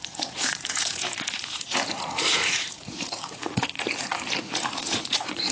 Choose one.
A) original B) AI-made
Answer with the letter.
B